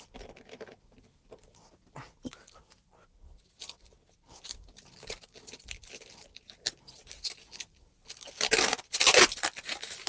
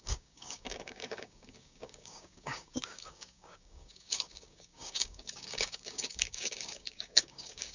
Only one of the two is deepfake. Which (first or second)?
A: second